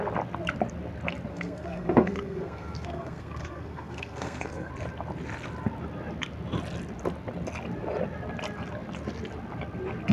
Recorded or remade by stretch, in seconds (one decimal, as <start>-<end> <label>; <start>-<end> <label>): 0.0-1.3 recorded; 1.3-4.7 remade; 4.7-10.1 recorded